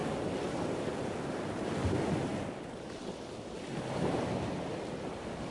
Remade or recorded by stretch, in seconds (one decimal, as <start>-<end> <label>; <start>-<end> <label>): 0.0-5.5 recorded